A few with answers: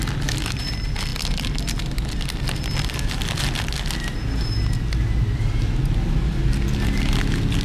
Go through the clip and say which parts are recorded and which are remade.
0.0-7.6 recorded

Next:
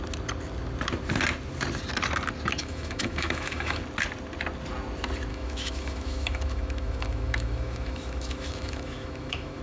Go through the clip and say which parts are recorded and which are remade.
0.0-2.6 recorded; 2.6-3.8 remade; 3.8-5.3 recorded; 5.3-9.6 remade

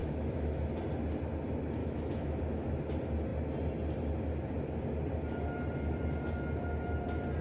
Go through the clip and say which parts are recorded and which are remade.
0.0-0.6 remade; 0.6-1.8 recorded; 1.8-2.4 remade; 2.4-7.4 recorded

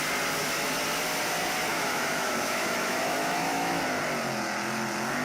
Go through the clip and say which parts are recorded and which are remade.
0.0-1.7 recorded; 1.7-3.8 remade; 3.8-5.2 recorded

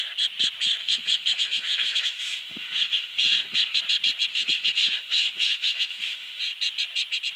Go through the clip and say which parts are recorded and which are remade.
0.0-0.8 recorded; 0.8-3.8 remade; 3.8-4.3 recorded; 4.3-6.4 remade; 6.4-7.4 recorded

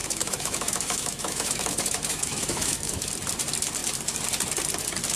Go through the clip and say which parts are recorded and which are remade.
0.0-3.1 remade; 3.1-5.2 recorded

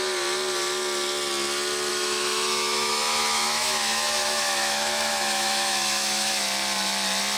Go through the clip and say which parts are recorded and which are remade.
0.0-1.9 recorded; 1.9-6.3 remade; 6.3-7.4 recorded